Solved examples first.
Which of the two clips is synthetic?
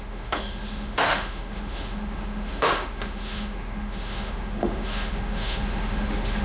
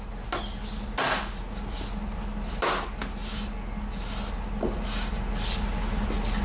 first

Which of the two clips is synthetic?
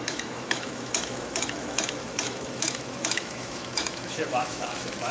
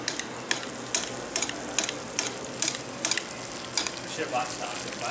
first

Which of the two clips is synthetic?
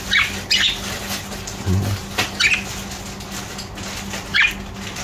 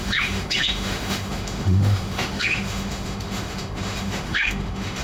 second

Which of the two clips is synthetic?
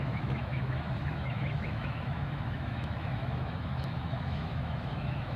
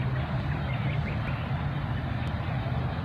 first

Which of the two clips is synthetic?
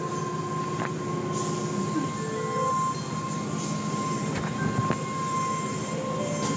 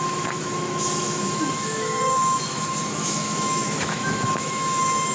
second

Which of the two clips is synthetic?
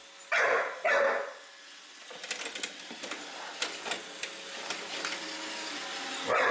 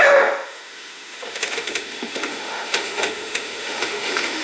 second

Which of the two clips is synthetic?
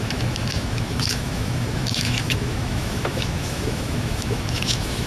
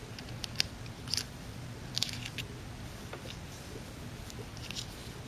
first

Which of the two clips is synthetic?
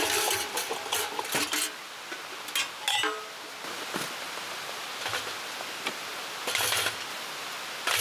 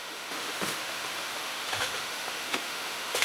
second